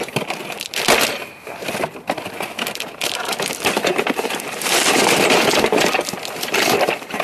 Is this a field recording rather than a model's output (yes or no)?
yes